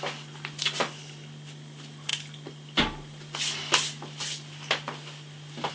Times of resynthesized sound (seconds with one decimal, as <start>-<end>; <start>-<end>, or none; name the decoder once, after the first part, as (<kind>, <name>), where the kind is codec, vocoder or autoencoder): none